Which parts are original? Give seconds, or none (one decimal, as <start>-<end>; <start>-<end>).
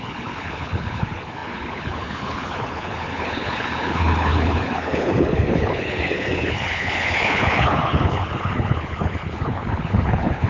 none